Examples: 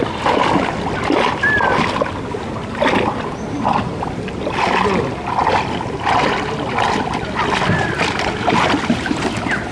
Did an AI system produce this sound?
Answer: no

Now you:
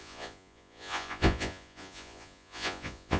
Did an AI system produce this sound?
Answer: yes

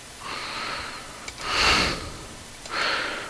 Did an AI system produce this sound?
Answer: no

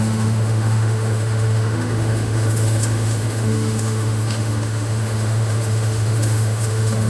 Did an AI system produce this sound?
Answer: yes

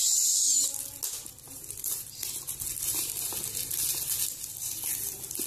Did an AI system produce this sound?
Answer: no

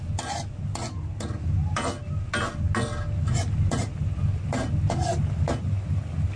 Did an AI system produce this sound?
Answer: no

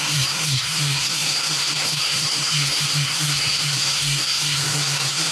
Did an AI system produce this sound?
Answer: yes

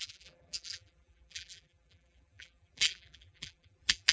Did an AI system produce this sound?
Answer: yes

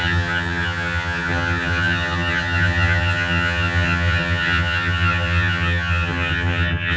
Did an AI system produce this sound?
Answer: yes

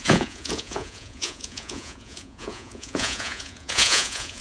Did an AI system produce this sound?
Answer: yes